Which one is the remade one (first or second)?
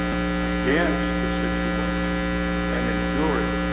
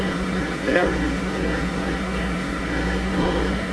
second